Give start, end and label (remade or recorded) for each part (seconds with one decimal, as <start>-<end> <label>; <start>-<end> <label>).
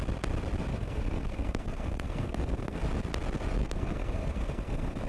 0.0-0.7 recorded; 0.7-2.8 remade; 2.8-3.6 recorded; 3.6-5.1 remade